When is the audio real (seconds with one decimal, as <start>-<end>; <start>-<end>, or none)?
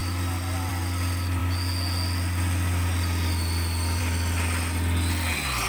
0.0-5.7